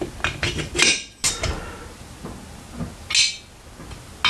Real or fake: real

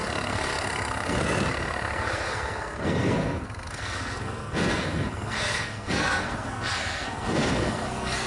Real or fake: fake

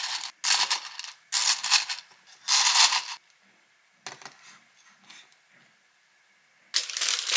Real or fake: real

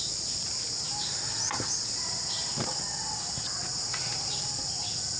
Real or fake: real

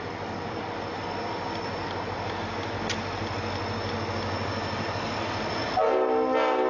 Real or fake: real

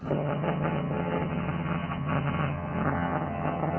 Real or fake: fake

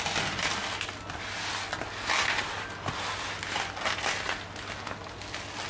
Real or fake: real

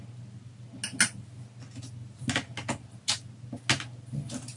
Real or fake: real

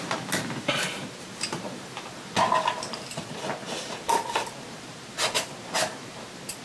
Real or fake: fake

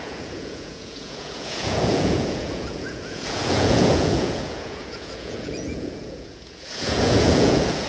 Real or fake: fake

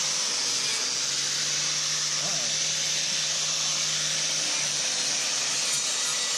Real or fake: real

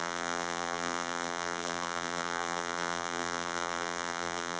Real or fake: fake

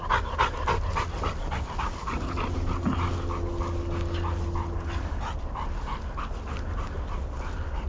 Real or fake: real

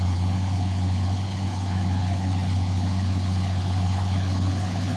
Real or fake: fake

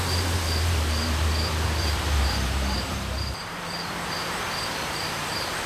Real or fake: fake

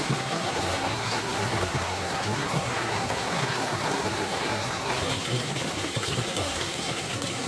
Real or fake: fake